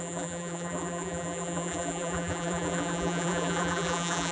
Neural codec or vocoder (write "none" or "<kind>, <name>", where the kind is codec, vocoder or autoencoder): vocoder, BigVGAN v2